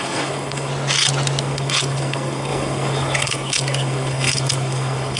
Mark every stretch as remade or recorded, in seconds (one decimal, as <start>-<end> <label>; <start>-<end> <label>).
0.0-0.7 remade; 0.7-1.4 recorded; 1.4-5.2 remade